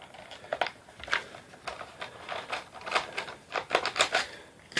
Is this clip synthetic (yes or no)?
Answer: no